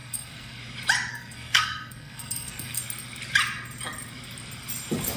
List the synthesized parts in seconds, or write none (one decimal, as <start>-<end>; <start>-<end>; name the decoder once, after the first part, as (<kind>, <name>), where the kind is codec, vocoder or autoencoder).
0.0-0.6 (codec, SNAC); 1.1-2.8